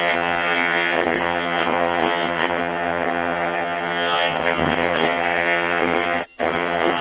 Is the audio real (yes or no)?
no